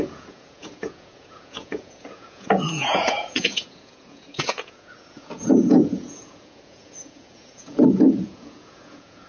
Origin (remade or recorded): remade